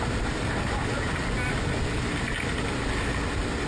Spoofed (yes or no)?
no